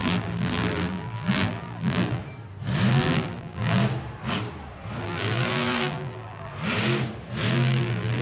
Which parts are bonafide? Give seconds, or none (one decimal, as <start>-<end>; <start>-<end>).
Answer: 2.2-2.9; 3.8-5.0; 6.5-7.5